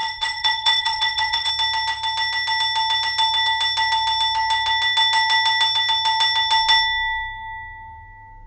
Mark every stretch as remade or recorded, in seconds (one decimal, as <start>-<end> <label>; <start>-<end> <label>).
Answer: 0.0-1.5 remade; 1.5-8.5 recorded